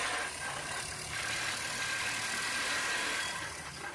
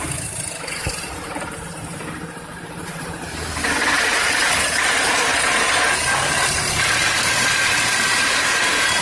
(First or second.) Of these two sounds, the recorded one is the first